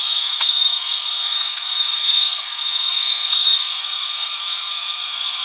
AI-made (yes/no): yes